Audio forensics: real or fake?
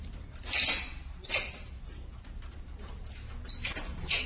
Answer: real